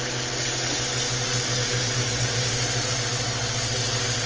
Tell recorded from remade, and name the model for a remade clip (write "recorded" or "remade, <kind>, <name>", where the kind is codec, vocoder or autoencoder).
recorded